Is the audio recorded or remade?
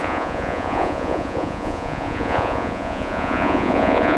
remade